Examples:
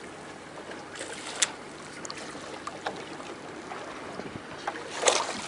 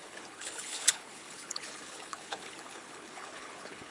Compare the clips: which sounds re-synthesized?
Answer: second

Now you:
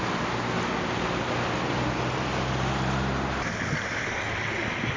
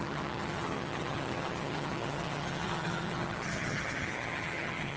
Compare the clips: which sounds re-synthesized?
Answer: second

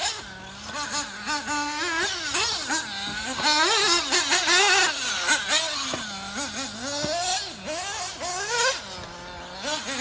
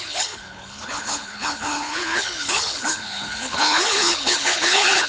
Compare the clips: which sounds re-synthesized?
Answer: second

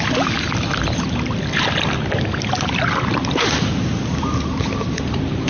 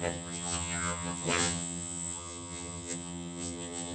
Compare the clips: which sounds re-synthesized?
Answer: second